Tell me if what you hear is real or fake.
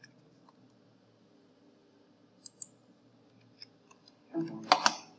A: real